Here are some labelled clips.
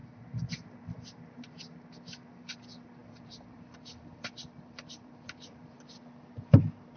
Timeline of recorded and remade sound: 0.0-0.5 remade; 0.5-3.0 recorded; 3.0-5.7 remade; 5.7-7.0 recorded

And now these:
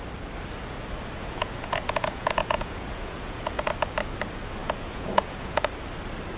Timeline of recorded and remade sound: 0.0-1.2 recorded; 1.2-3.7 remade; 3.7-4.6 recorded; 4.6-5.6 remade; 5.6-6.4 recorded